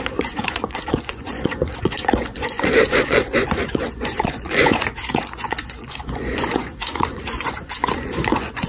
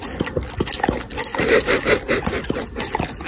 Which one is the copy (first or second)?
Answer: first